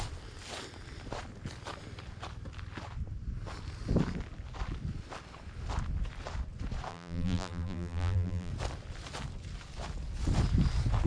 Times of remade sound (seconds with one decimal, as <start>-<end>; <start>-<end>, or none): 6.9-8.5